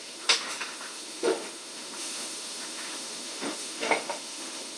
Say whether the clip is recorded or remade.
remade